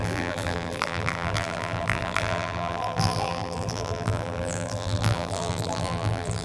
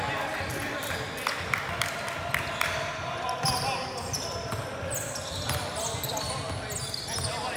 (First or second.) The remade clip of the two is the first